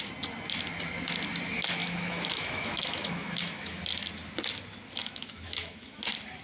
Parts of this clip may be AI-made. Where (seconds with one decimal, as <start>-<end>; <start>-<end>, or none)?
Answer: 1.8-3.8; 5.0-6.0